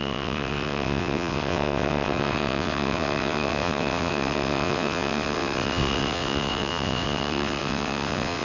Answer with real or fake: fake